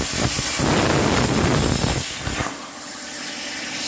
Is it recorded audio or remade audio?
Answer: recorded